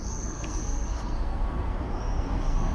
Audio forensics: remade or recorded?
remade